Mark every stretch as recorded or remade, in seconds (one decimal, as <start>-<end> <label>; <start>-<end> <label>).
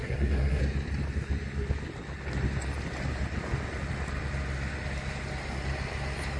0.0-0.6 remade; 0.6-6.4 recorded